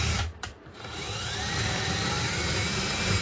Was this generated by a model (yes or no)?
yes